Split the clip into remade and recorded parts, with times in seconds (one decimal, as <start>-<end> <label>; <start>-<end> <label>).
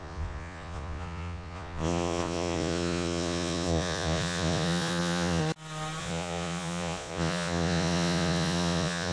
0.0-5.4 remade; 5.4-6.0 recorded; 6.0-9.1 remade